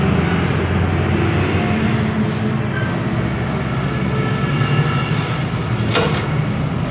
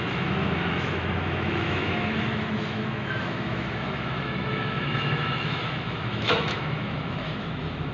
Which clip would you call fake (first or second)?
second